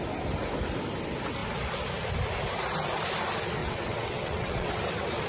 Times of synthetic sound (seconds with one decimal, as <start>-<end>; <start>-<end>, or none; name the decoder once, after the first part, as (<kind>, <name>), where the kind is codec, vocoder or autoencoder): 3.6-4.7 (vocoder, WaveNeXt)